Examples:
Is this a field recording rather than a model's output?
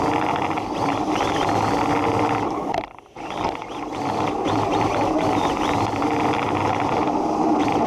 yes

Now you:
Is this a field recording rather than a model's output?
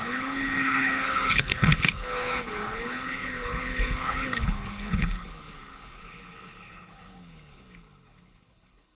no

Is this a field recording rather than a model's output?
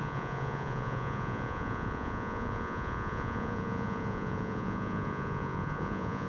no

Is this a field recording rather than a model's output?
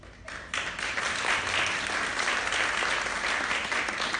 yes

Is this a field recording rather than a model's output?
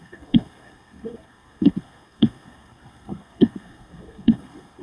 no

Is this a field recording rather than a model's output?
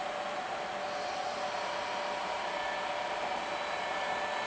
yes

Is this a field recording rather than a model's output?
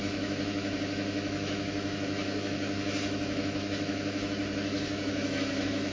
no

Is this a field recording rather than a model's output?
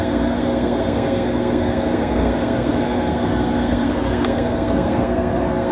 no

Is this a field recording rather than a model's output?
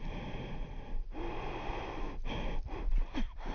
no